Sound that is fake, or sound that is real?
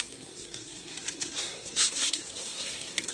fake